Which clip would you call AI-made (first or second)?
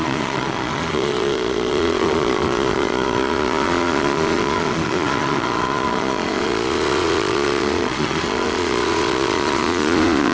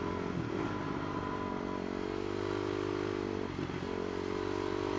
first